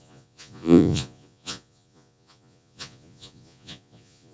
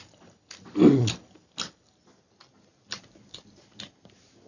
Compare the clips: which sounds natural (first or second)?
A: second